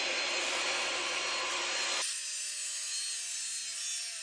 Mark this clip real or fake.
real